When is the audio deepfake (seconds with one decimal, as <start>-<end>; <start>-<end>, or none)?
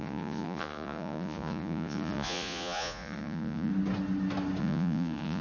0.0-3.7; 4.6-5.4